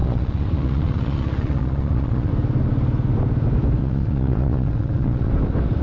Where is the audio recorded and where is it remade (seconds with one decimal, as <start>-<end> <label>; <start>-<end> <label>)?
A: 0.0-2.3 remade; 2.3-3.8 recorded; 3.8-5.3 remade; 5.3-5.8 recorded